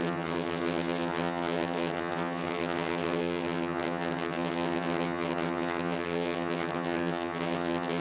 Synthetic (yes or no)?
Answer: yes